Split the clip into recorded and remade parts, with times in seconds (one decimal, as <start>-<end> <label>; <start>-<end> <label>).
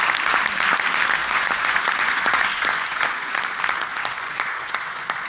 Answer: 0.0-1.2 recorded; 1.2-3.4 remade; 3.4-3.9 recorded; 3.9-5.3 remade